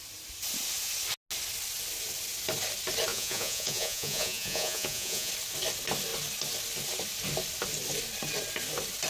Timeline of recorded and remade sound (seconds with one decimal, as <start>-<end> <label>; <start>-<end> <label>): 0.0-3.1 recorded; 3.1-5.3 remade; 5.3-9.1 recorded